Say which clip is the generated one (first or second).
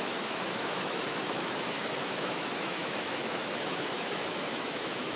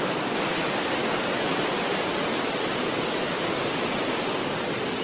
first